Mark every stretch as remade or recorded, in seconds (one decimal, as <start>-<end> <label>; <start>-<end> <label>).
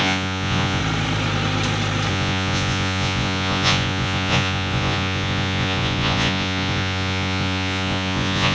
0.0-0.8 remade; 0.8-2.1 recorded; 2.1-8.5 remade